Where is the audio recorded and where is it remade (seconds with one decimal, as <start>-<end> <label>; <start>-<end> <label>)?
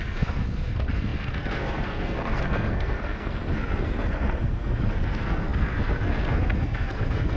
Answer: 0.0-7.4 remade